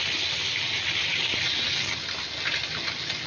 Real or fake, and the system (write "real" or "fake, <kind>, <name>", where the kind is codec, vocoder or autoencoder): real